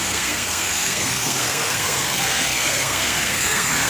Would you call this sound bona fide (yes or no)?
no